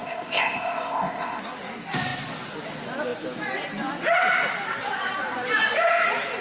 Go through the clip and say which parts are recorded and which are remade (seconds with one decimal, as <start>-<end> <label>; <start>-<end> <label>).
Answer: 0.0-1.4 remade; 1.4-6.4 recorded